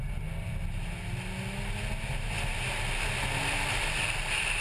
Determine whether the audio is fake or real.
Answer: real